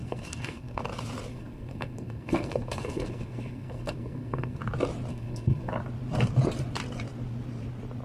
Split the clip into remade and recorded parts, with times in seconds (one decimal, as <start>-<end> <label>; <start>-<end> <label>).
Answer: 0.0-0.8 remade; 0.8-1.3 recorded; 1.3-4.6 remade; 4.6-5.1 recorded; 5.1-5.7 remade; 5.7-8.0 recorded